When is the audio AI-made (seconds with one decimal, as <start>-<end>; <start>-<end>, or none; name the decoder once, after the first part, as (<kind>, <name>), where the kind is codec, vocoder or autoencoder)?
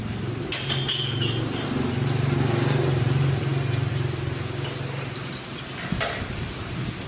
none